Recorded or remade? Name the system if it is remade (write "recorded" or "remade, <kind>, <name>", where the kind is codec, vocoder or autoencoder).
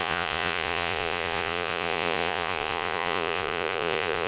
remade, vocoder, Vocos